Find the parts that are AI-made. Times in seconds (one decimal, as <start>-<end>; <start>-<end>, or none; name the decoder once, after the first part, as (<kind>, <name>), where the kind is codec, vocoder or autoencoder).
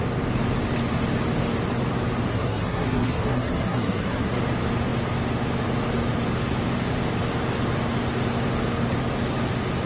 2.3-4.4 (codec, SNAC)